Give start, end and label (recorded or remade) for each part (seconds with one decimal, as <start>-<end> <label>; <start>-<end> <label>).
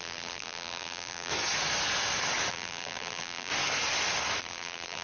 0.0-1.3 remade; 1.3-2.5 recorded; 2.5-3.5 remade; 3.5-4.4 recorded; 4.4-5.0 remade